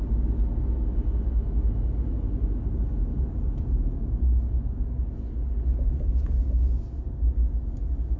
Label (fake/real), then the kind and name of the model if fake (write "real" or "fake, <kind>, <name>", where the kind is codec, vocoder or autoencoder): real